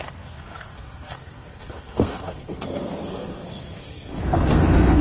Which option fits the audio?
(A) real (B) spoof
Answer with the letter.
B